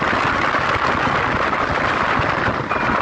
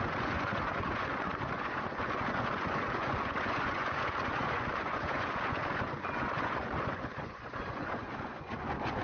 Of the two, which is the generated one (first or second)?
second